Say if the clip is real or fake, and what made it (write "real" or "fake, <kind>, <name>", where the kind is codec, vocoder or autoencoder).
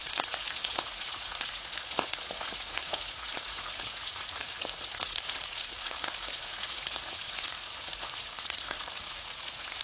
fake, vocoder, Vocos